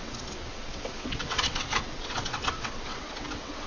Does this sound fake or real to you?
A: fake